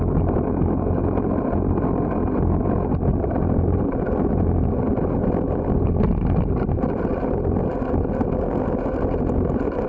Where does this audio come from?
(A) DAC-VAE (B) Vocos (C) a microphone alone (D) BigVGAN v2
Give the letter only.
C